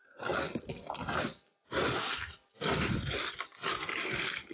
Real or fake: real